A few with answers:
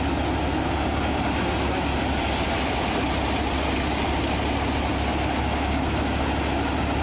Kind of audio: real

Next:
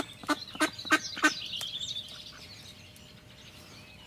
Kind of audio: real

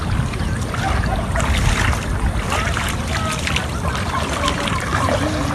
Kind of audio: real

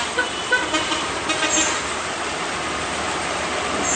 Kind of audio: fake